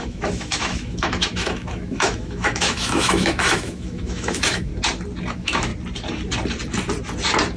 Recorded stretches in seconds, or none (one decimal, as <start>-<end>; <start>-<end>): 4.7-5.3; 5.7-7.6